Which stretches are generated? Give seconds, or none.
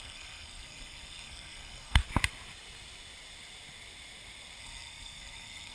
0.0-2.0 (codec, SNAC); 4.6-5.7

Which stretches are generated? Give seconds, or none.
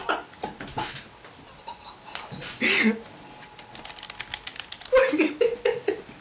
none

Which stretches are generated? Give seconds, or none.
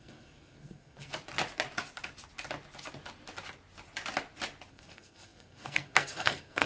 0.0-1.1 (codec, SNAC); 4.7-6.7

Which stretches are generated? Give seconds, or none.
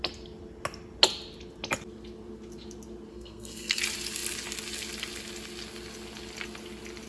3.1-3.8 (codec, SNAC)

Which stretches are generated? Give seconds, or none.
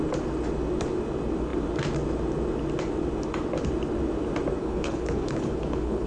4.6-6.1 (codec, HILCodec)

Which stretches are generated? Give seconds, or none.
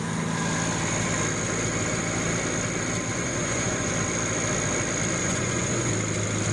3.1-3.9 (vocoder, Vocos); 5.2-5.9